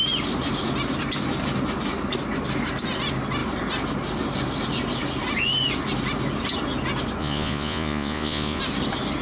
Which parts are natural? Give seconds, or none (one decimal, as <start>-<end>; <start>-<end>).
0.0-7.2; 8.6-9.2